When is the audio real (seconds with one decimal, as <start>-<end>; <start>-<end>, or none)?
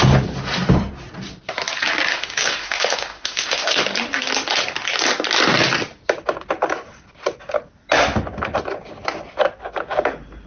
0.0-2.1; 3.8-10.5